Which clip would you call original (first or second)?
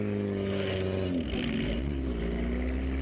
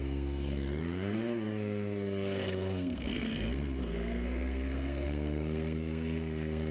first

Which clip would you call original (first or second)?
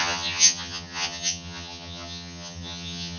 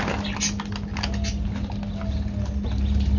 second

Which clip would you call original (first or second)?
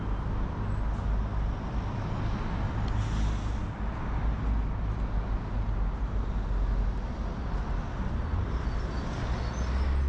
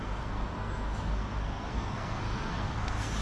first